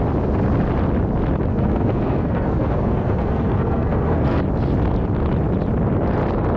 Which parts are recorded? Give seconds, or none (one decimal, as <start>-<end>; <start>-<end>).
0.0-1.5; 4.4-6.6

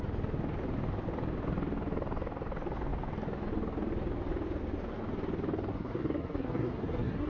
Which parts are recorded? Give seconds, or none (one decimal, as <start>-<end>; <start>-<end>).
0.0-5.7

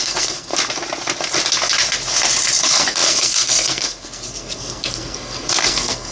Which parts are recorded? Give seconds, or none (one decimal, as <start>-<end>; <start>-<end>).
0.5-2.6

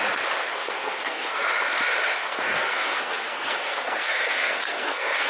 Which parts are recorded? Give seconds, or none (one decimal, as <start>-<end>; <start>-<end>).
0.0-0.5; 1.4-2.2

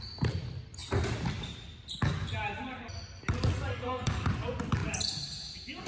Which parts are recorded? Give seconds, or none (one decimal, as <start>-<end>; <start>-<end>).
0.0-3.7; 4.3-5.9